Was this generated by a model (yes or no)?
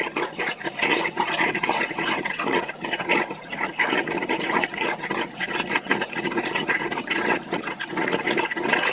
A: yes